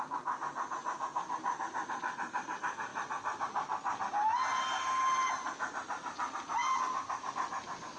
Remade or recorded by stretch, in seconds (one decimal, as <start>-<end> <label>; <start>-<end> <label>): 0.0-8.0 recorded